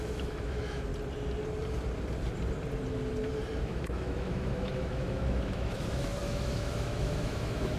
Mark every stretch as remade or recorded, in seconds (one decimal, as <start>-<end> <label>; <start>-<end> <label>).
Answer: 0.0-0.9 remade; 0.9-3.6 recorded; 3.6-7.8 remade